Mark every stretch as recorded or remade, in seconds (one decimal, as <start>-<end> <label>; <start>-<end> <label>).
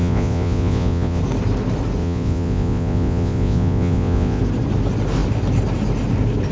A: 0.0-1.2 remade; 1.2-2.0 recorded; 2.0-4.4 remade; 4.4-6.5 recorded